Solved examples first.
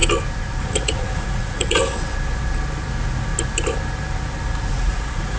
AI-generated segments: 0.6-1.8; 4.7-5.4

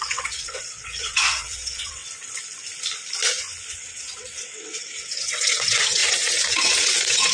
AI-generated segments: 0.0-2.0; 3.7-7.3

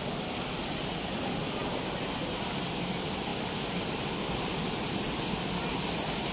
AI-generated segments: none

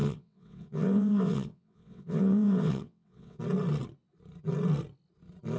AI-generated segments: 0.0-3.4

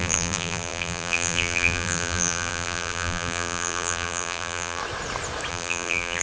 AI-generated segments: 0.0-4.8; 5.5-6.2

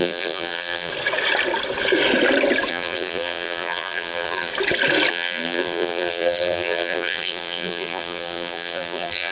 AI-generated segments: 0.0-0.9; 2.7-4.5; 5.1-9.3

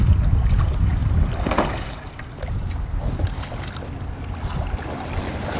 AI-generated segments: none